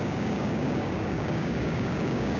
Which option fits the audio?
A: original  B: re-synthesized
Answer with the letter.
B